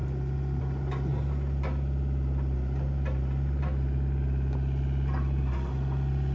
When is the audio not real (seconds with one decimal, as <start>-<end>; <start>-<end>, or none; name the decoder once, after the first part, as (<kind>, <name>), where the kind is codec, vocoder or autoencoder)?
none